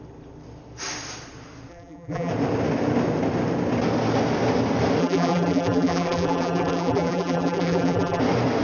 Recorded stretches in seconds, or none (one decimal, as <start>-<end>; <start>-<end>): 0.0-1.7; 2.3-5.0; 8.2-8.6